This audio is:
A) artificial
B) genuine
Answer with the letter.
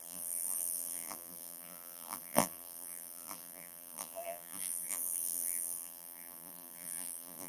A